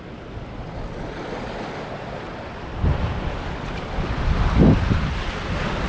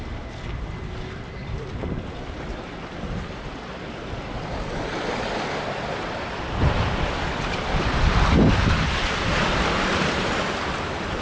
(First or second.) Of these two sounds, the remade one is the second